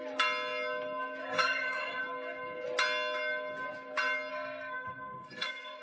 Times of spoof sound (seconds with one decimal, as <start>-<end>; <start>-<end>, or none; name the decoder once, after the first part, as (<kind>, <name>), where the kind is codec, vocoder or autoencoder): 1.2-2.0 (codec, SNAC); 4.3-5.8